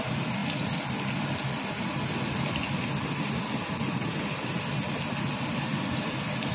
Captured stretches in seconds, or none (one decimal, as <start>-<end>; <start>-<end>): 0.0-6.5